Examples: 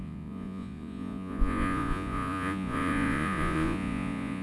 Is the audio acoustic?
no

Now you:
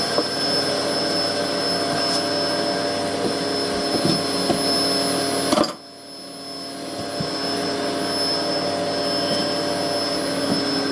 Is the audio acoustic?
yes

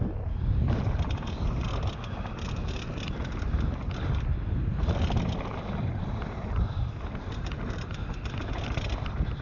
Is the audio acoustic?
yes